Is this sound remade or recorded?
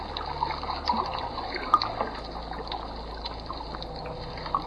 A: recorded